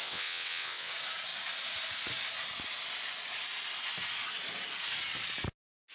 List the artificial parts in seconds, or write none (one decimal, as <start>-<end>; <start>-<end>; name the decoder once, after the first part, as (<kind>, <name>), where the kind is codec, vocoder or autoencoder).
0.0-0.9 (vocoder, WaveNeXt)